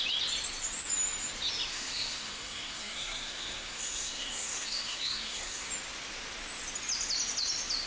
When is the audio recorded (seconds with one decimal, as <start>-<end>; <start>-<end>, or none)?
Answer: 0.0-1.7; 5.7-7.9